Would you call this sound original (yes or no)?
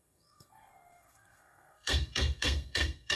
no